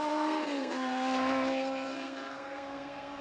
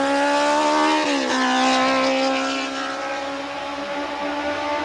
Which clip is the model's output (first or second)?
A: first